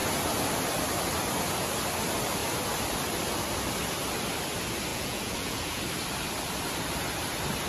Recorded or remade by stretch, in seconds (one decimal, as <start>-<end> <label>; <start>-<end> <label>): 0.0-4.9 recorded; 4.9-5.8 remade; 5.8-7.7 recorded